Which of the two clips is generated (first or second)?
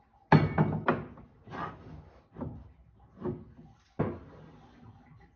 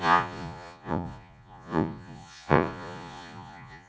second